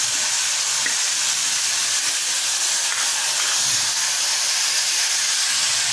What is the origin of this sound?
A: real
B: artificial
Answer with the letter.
A